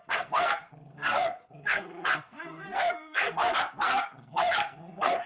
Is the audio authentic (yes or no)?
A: no